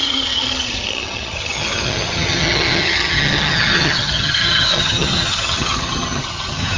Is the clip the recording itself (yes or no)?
no